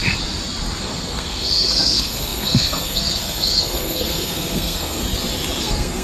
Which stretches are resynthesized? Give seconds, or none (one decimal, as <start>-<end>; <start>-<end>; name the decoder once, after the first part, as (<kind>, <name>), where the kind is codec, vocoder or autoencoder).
0.8-5.0 (codec, SNAC); 5.6-6.0